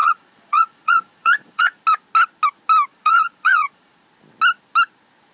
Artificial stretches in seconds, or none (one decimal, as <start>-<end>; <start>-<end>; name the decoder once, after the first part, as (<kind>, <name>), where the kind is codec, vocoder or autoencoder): 0.0-1.8 (vocoder, Vocos); 2.9-4.0